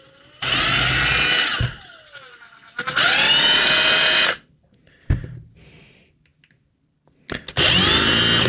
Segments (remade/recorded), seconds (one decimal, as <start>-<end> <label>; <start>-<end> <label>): 0.0-8.5 recorded